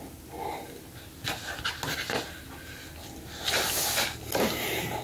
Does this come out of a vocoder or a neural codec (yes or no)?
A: no